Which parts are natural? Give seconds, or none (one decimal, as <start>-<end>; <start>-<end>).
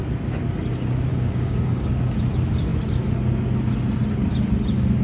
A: 0.0-1.1; 1.9-5.0